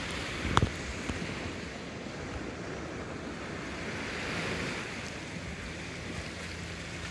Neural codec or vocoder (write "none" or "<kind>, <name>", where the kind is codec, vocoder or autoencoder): none